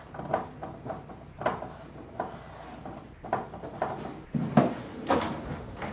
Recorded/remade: recorded